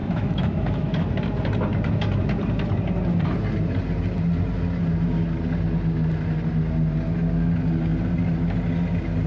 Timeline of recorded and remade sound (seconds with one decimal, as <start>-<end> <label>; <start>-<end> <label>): 0.0-1.1 remade; 1.1-9.3 recorded